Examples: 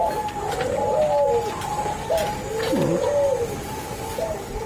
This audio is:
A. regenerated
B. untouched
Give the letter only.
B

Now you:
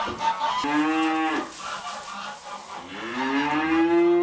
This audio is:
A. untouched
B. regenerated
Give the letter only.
A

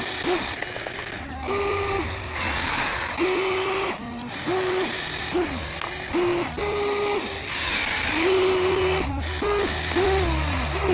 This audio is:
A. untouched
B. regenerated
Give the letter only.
A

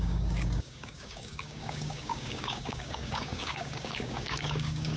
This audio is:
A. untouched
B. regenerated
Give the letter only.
B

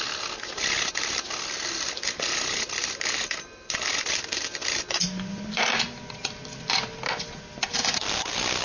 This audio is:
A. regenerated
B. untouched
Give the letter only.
B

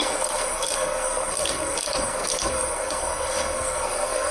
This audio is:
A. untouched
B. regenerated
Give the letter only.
B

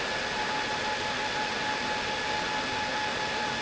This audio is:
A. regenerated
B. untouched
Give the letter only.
B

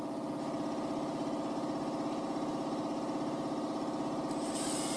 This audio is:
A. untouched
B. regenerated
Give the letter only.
A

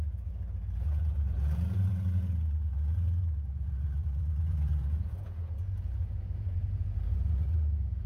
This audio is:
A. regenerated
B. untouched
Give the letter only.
A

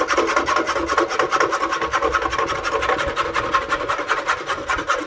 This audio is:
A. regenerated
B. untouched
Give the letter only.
B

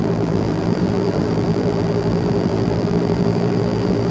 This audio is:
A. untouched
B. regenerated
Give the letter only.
B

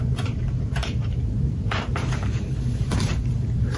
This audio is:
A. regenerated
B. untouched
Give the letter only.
A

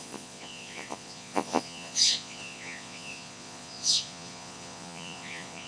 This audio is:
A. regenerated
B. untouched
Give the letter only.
A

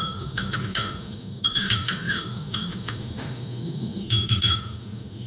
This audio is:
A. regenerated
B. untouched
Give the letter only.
A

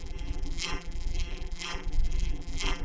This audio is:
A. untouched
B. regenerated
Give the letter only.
B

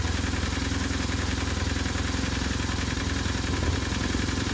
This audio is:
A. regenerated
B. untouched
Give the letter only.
B